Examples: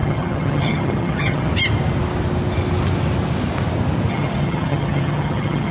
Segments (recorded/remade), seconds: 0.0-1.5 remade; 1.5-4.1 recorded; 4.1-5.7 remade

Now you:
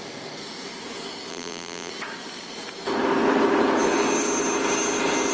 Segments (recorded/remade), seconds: 0.0-1.3 recorded; 1.3-1.9 remade; 1.9-5.3 recorded